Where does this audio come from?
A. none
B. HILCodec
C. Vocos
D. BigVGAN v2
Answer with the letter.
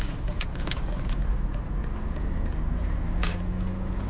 A